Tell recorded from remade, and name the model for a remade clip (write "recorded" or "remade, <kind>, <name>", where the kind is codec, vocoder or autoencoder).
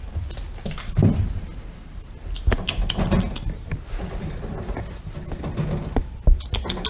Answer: recorded